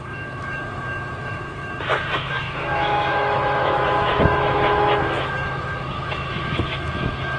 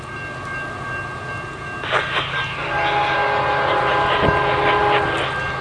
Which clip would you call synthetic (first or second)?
first